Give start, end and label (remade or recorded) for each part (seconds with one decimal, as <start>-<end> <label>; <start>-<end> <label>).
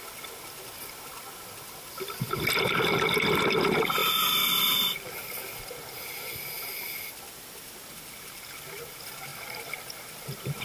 0.0-10.6 recorded